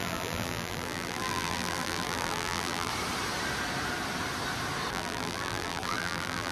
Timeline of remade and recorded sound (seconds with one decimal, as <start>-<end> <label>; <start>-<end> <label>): 0.0-2.9 remade; 2.9-4.9 recorded; 4.9-6.5 remade